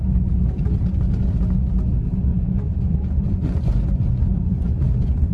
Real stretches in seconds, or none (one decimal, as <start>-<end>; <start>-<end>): 0.0-2.3